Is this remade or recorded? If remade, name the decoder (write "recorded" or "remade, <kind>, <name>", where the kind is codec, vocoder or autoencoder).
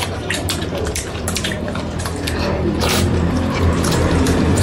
remade, vocoder, BigVGAN v2